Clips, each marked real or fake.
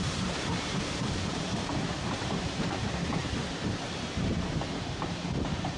fake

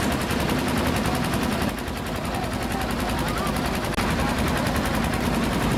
real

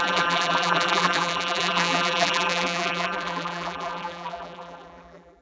fake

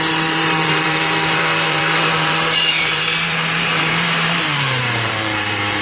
fake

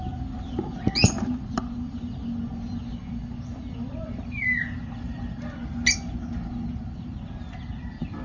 real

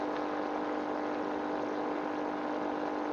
real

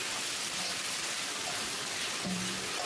fake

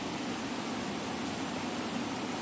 real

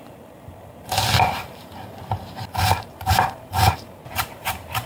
fake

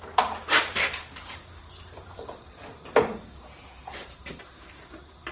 fake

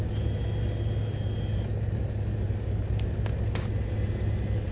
real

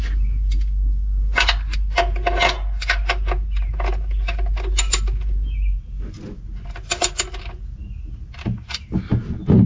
real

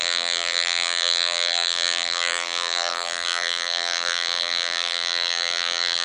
fake